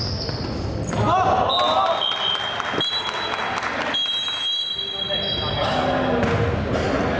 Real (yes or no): yes